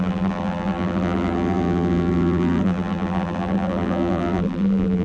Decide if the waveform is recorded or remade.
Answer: remade